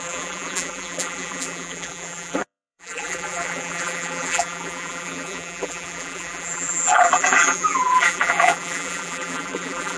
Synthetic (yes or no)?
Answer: yes